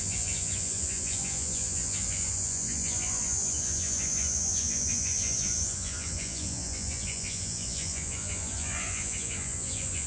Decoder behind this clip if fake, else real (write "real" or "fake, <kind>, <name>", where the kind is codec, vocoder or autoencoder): fake, vocoder, Vocos